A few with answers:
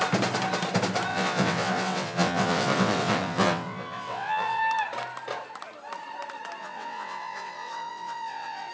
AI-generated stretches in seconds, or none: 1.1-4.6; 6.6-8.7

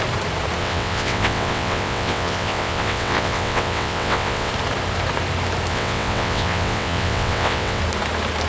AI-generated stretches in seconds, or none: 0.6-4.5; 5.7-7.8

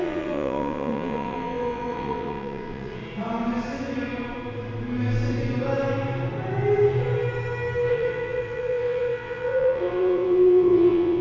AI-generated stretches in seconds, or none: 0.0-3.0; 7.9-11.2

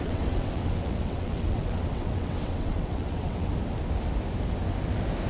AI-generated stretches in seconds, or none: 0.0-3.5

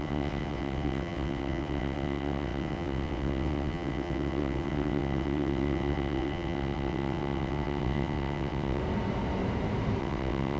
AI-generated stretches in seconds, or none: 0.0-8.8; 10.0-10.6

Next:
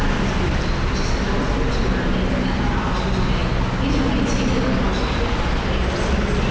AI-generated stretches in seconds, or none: none